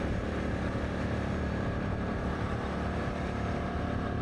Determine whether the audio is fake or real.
fake